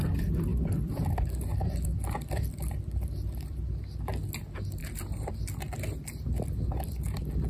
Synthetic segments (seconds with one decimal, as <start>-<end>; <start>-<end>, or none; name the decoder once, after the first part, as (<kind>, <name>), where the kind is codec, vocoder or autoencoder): 0.5-1.1 (vocoder, BigVGAN v2); 1.5-3.8